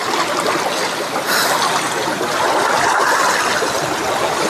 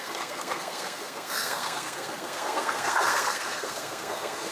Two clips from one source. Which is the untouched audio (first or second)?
first